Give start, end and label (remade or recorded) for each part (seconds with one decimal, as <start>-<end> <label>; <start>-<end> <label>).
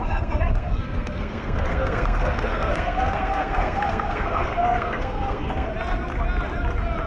0.0-5.7 remade; 5.7-7.1 recorded